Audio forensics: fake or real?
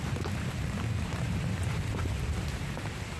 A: real